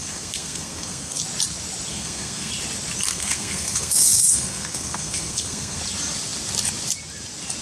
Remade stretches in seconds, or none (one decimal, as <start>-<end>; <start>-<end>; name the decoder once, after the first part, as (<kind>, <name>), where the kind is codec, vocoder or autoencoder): 0.0-1.2 (codec, SNAC); 1.9-2.5; 3.1-5.8